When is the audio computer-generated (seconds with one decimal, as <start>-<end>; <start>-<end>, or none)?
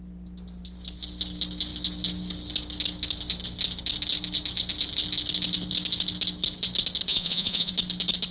7.1-7.7